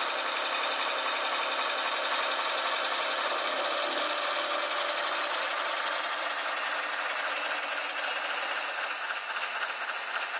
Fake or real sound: real